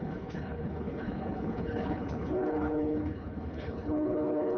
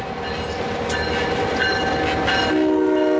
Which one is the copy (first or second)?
first